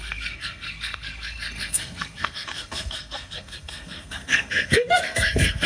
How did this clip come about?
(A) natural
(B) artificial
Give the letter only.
B